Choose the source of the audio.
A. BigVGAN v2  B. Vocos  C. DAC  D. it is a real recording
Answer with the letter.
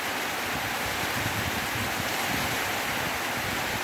D